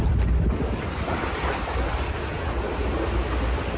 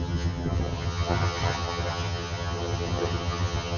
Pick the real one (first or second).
first